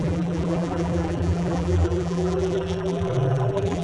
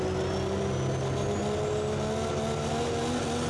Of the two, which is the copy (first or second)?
first